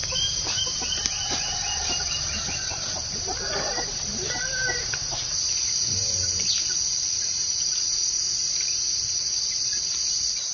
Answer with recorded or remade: remade